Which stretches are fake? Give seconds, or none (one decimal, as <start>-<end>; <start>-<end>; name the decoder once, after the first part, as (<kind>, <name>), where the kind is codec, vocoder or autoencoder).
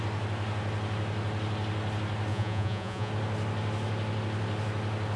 2.3-3.1 (vocoder, Vocos)